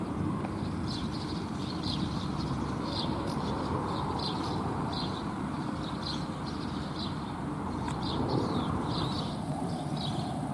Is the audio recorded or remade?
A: remade